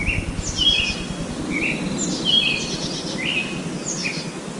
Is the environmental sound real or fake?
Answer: real